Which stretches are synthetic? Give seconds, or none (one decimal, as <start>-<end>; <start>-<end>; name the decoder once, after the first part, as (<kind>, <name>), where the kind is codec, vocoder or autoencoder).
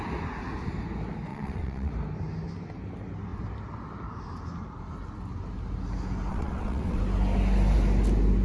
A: 1.3-1.9 (vocoder, WaveNeXt); 6.3-7.0